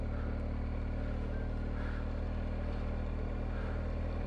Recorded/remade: recorded